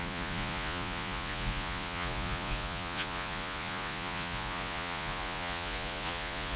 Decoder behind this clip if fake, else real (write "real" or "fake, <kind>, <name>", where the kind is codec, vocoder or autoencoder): fake, vocoder, Vocos